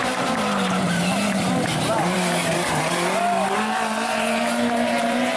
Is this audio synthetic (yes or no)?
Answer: yes